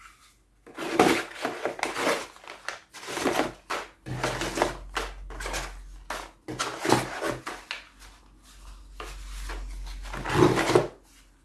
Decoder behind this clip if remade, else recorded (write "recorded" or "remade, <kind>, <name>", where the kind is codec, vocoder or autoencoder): recorded